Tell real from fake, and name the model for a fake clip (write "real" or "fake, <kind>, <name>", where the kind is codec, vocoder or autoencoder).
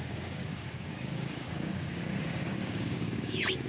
fake, codec, DAC